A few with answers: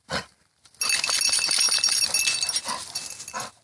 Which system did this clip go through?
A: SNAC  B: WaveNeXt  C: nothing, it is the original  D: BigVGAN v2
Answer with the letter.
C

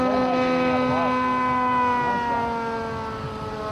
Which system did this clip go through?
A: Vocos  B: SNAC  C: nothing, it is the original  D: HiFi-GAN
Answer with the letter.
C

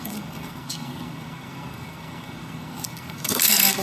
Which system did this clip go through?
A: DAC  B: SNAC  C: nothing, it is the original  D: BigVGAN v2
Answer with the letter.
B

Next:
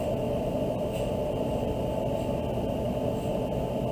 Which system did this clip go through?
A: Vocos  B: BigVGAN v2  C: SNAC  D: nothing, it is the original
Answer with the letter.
D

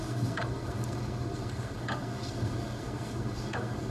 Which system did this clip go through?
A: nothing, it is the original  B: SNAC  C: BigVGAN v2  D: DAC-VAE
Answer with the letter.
B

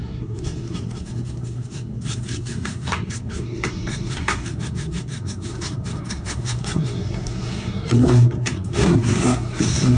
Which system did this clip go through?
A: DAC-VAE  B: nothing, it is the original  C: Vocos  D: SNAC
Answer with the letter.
D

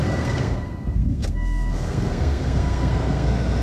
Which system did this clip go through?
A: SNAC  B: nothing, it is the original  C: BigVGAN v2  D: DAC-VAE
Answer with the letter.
A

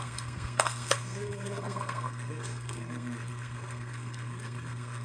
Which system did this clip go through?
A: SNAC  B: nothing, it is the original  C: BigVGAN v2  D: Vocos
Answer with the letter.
A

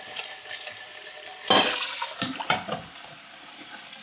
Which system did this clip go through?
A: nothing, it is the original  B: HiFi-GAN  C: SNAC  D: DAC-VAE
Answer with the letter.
A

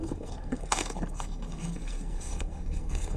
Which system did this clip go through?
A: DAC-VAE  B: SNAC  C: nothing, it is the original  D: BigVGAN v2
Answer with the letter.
B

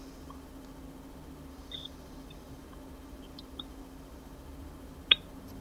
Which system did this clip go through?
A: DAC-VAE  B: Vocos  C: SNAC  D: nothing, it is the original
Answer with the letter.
D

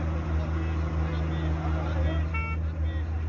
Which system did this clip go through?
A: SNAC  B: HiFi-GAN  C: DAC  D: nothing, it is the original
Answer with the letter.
D